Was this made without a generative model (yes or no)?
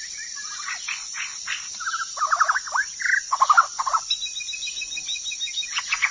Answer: yes